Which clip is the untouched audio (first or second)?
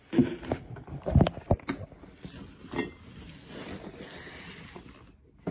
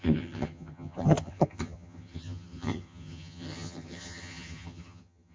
first